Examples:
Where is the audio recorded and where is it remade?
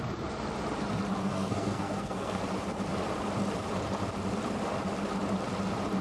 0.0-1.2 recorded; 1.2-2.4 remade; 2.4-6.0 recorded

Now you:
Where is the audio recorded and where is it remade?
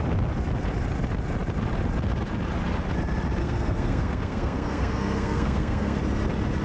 0.0-3.4 recorded; 3.4-6.0 remade; 6.0-6.6 recorded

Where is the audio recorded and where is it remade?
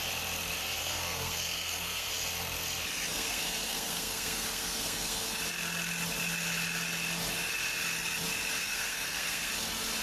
0.0-0.8 recorded; 0.8-2.1 remade; 2.1-3.1 recorded; 3.1-5.4 remade; 5.4-8.6 recorded; 8.6-9.5 remade; 9.5-10.0 recorded